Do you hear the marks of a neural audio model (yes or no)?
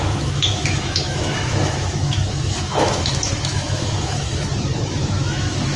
yes